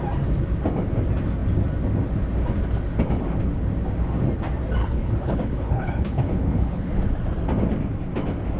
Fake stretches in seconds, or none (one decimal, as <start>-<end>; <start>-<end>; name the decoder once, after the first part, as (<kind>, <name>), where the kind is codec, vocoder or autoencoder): 4.8-6.9 (codec, HILCodec)